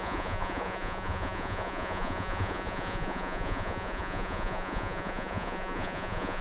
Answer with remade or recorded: remade